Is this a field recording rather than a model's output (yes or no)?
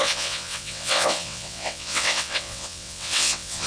no